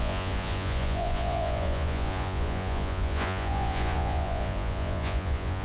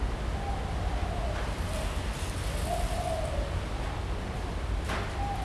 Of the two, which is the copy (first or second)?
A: first